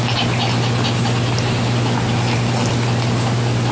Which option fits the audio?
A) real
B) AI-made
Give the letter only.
A